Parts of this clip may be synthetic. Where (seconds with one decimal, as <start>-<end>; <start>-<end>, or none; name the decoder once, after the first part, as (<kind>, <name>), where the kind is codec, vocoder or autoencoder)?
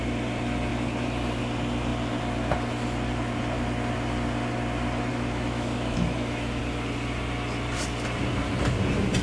5.1-6.6 (autoencoder, DAC-VAE)